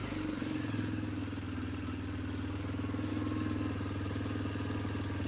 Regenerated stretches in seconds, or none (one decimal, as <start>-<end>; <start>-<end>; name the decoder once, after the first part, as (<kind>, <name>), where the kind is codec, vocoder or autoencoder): none